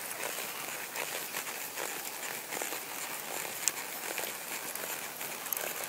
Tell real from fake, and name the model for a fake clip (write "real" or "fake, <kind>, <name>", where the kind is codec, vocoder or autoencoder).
real